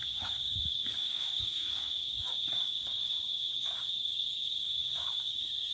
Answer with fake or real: fake